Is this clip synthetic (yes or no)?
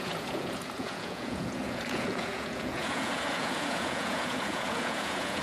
yes